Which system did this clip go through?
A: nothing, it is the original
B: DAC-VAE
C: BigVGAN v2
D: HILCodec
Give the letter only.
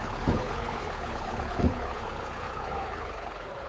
D